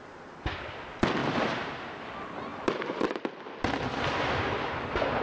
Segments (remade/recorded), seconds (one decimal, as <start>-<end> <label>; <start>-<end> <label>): 0.0-1.2 recorded; 1.2-1.8 remade; 1.8-2.5 recorded; 2.5-4.6 remade; 4.6-5.2 recorded